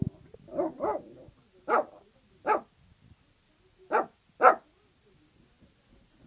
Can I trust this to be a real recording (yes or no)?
yes